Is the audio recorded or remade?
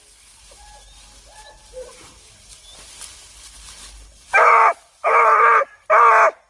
recorded